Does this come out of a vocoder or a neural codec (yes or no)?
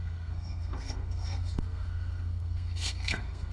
yes